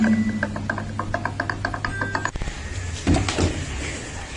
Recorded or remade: recorded